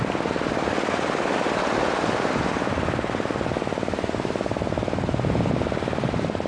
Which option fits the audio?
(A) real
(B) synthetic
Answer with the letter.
A